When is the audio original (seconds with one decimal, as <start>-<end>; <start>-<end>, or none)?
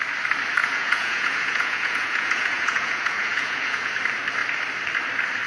0.0-0.6; 3.9-5.5